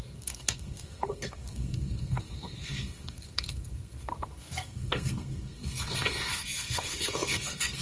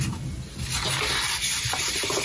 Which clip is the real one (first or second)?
second